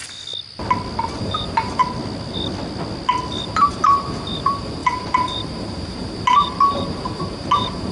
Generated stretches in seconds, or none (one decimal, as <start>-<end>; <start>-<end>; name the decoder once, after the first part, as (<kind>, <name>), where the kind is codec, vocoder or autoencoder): 1.2-1.8 (vocoder, BigVGAN v2); 3.4-7.9